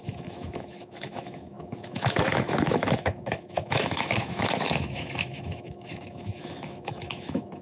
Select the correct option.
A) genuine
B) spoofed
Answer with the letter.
B